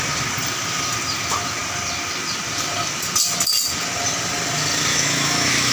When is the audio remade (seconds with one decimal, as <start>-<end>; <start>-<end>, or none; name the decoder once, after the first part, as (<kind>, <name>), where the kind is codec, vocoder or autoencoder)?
4.9-5.7 (autoencoder, DAC-VAE)